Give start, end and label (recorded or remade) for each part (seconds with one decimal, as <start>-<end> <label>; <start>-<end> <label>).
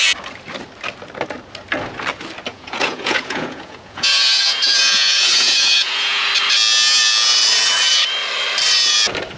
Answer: 0.0-2.5 recorded; 2.5-6.3 remade; 6.3-9.4 recorded